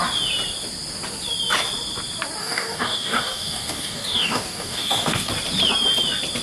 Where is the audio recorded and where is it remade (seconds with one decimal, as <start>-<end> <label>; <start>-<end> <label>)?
0.0-2.4 recorded; 2.4-5.3 remade; 5.3-6.4 recorded